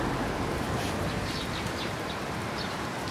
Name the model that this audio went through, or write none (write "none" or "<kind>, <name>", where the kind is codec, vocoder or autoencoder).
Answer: vocoder, BigVGAN v2